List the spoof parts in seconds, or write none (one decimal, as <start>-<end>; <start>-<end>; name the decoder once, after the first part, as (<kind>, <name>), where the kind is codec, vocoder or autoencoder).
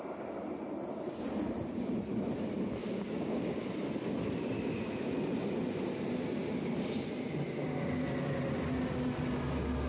2.8-3.7 (codec, DAC)